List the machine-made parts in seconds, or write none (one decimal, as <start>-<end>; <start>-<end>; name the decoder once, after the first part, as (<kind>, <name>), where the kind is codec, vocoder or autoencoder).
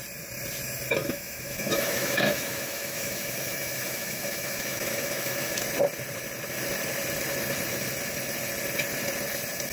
1.0-5.6 (autoencoder, DAC-VAE)